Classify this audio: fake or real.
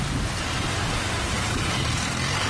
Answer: real